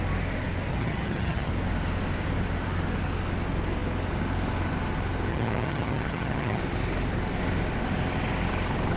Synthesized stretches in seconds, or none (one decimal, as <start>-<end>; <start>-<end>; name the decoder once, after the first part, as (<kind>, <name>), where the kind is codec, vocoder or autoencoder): 0.7-1.5 (vocoder, HiFi-GAN); 5.3-6.6

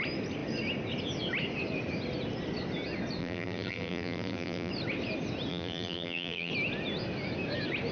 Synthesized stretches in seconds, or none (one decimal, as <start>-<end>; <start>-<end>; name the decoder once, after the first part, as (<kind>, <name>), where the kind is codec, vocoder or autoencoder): 3.2-4.7 (vocoder, BigVGAN v2); 5.5-6.5

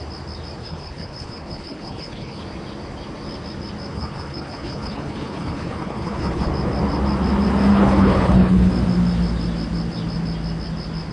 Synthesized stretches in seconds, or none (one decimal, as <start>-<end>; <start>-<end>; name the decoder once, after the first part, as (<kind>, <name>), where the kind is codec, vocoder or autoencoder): 0.6-2.4 (codec, HILCodec); 3.9-6.5; 7.7-8.7

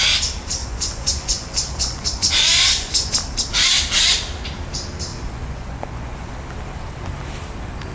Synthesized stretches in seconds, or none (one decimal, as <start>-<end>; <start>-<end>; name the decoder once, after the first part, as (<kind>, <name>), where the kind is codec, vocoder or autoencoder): 0.6-3.1 (vocoder, Vocos); 5.1-6.3

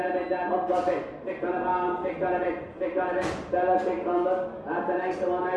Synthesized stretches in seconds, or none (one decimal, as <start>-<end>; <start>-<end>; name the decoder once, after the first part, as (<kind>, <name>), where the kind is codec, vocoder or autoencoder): none